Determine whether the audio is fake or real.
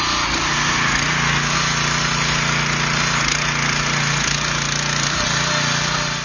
real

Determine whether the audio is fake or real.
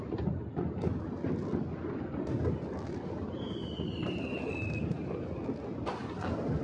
real